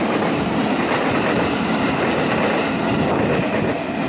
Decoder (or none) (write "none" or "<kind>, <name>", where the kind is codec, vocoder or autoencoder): none